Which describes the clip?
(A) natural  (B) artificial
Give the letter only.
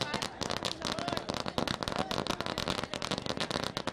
A